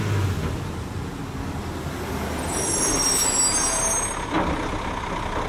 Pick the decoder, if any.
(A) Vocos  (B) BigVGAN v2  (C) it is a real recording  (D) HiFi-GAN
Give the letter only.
C